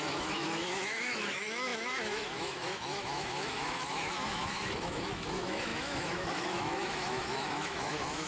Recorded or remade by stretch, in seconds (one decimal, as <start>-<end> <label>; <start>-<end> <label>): 0.0-8.3 remade